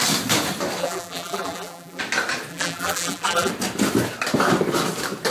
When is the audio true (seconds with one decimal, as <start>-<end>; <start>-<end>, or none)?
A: 0.0-0.8; 2.0-2.5; 3.5-5.3